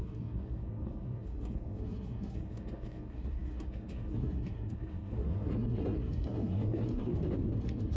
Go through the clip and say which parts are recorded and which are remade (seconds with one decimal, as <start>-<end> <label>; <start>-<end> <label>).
0.0-7.1 remade; 7.1-7.6 recorded; 7.6-8.0 remade